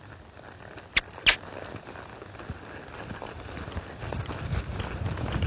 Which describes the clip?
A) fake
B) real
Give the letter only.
B